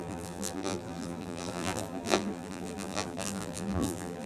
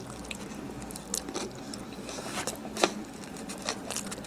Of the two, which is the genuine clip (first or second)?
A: second